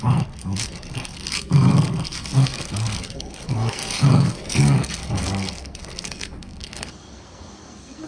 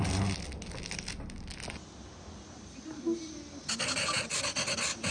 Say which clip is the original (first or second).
second